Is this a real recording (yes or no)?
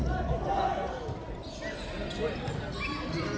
yes